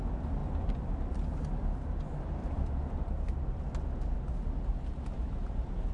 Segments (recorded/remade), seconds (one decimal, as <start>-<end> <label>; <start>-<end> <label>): 0.0-0.4 recorded; 0.4-1.5 remade; 1.5-2.4 recorded; 2.4-3.6 remade; 3.6-5.9 recorded